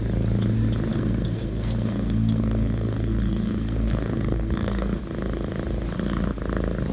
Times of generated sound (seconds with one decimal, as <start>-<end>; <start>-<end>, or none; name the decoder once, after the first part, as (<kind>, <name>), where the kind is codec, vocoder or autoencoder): 0.9-5.0 (codec, SNAC)